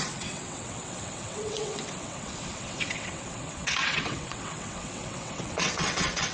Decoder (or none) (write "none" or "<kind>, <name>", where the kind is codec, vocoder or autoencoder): vocoder, WaveNeXt